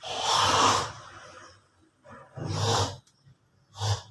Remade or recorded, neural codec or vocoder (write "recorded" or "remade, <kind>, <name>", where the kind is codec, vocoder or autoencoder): recorded